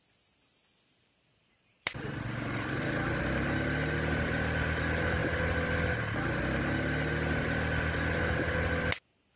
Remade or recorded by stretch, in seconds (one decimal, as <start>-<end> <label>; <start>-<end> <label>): 0.0-9.4 recorded